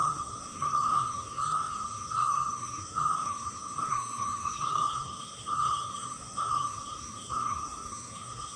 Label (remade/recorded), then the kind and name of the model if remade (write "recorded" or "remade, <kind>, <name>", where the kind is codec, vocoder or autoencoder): remade, codec, SNAC